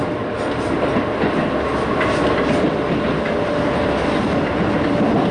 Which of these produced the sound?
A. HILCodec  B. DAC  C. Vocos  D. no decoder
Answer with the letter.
D